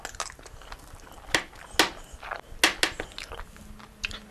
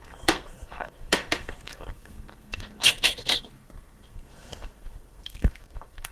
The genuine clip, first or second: first